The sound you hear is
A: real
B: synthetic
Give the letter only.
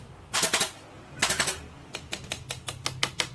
A